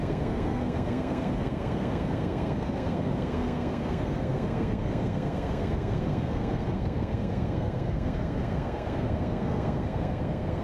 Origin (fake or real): fake